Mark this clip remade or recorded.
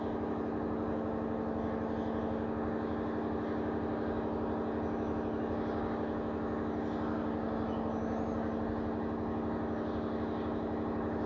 recorded